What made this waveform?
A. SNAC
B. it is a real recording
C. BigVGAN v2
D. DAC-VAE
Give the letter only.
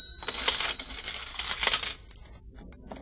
B